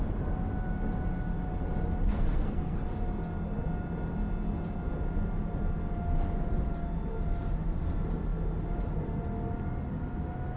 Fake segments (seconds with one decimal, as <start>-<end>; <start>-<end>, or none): 2.1-2.8

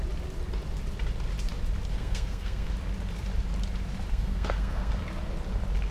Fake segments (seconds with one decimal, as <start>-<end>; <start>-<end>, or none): 1.9-2.7; 4.1-4.9

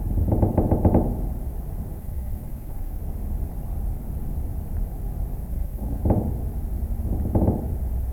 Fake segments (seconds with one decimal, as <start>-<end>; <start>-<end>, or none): 2.0-3.0; 5.5-6.0

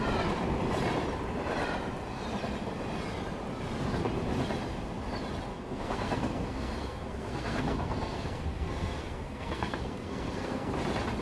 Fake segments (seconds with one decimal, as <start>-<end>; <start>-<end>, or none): 5.5-10.7

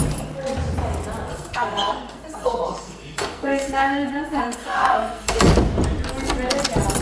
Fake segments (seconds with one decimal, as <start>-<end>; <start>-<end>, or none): 1.3-5.5